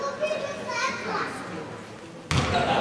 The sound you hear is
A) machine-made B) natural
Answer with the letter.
B